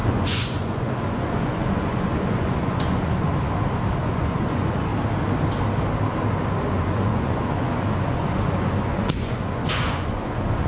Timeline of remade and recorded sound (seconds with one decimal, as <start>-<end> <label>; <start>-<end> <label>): 0.0-3.3 remade; 3.3-4.0 recorded; 4.0-4.9 remade; 4.9-6.7 recorded; 6.7-10.7 remade